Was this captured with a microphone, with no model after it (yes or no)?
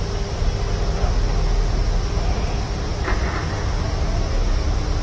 yes